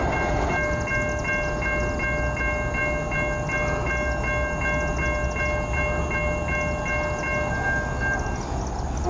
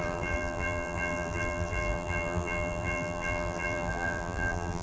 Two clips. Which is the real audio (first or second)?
first